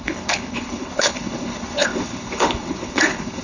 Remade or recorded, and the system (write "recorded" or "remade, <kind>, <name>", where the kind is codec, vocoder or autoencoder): remade, codec, HILCodec